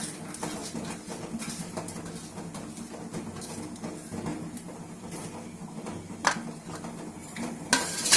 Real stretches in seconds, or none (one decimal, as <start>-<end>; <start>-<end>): 0.0-4.3; 4.8-7.2